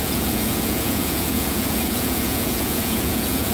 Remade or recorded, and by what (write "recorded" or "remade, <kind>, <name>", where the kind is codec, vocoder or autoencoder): remade, vocoder, Vocos